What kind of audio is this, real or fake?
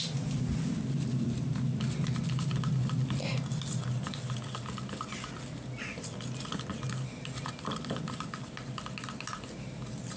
real